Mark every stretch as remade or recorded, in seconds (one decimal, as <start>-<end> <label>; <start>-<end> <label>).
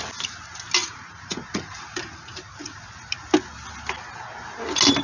0.0-0.8 recorded; 0.8-2.9 remade; 2.9-5.0 recorded